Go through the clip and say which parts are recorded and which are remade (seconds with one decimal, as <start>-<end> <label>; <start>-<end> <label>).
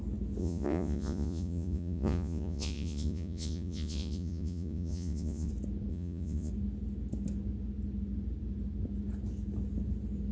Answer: 0.0-0.4 recorded; 0.4-5.5 remade; 5.5-5.9 recorded; 5.9-6.5 remade; 6.5-10.3 recorded